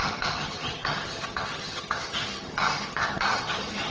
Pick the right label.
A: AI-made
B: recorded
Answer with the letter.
A